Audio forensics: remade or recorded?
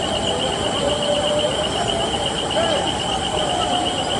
recorded